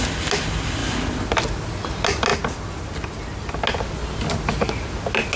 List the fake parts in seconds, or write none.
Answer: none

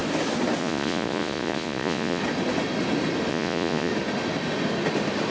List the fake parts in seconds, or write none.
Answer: 0.6-2.2 (vocoder, Vocos); 3.3-3.9

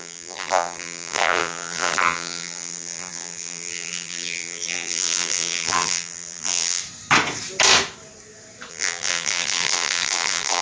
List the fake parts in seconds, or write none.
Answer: 0.0-6.8 (vocoder, BigVGAN v2); 8.7-10.6

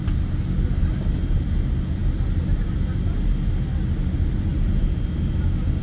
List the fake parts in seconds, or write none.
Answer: none

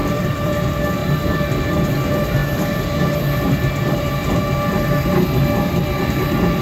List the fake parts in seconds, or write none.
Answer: 0.0-0.5 (vocoder, BigVGAN v2); 1.0-1.9